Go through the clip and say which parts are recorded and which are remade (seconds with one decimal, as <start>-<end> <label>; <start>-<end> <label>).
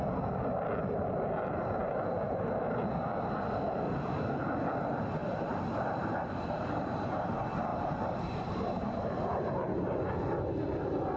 0.0-1.8 recorded; 1.8-2.7 remade; 2.7-5.2 recorded; 5.2-7.1 remade; 7.1-7.7 recorded; 7.7-10.2 remade; 10.2-11.2 recorded